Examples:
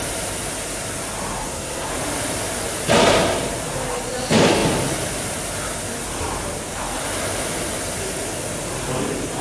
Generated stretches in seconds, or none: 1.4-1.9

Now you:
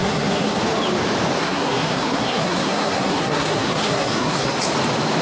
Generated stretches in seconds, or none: 0.0-0.6; 1.4-4.5

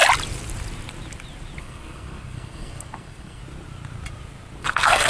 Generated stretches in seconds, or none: 1.6-3.4; 4.6-5.1

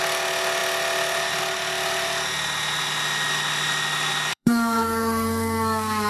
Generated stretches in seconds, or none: 4.3-6.1

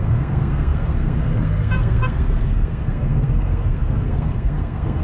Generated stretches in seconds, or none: 0.0-5.0